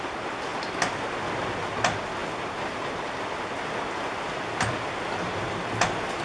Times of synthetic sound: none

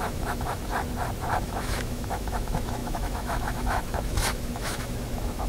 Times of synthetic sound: 0.0-0.6 (autoencoder, DAC-VAE); 1.4-5.5

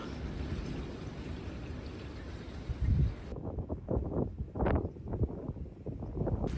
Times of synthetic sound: 3.3-4.6 (autoencoder, DAC-VAE)

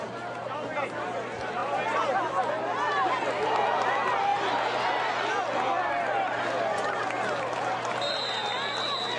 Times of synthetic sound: none

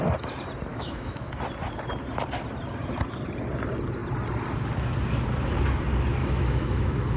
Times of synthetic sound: 0.7-1.3 (autoencoder, DAC-VAE); 6.2-7.2

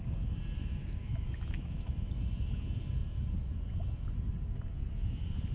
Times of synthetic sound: 0.6-2.1 (autoencoder, DAC-VAE)

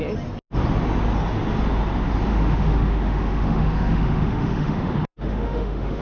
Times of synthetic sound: 2.3-6.0 (autoencoder, DAC-VAE)